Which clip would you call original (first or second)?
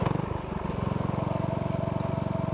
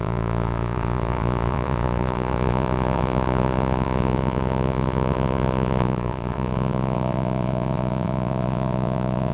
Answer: first